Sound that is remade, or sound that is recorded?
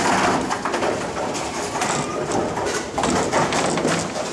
recorded